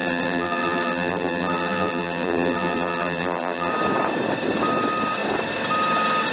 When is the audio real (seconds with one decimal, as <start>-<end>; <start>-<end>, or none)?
3.7-6.3